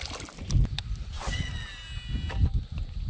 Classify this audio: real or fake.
real